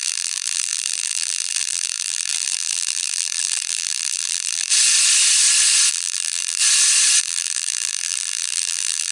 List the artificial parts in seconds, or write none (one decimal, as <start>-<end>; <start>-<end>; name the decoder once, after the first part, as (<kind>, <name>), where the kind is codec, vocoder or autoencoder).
0.0-4.7 (vocoder, BigVGAN v2); 5.9-6.6; 7.2-9.1